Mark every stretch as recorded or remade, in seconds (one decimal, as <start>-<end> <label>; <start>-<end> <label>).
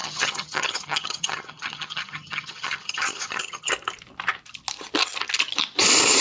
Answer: 0.0-3.7 remade; 3.7-6.2 recorded